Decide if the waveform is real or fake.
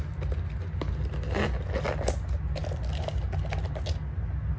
real